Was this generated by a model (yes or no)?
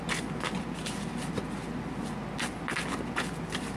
no